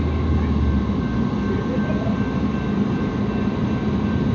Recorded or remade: recorded